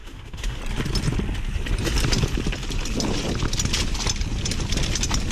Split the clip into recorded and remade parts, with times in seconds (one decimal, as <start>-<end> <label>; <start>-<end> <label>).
0.0-0.6 remade; 0.6-5.3 recorded